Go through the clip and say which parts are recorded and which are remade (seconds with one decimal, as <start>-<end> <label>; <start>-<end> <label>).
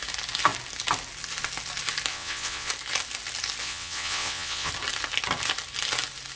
0.0-2.1 recorded; 2.1-2.7 remade; 2.7-3.6 recorded; 3.6-4.7 remade; 4.7-6.4 recorded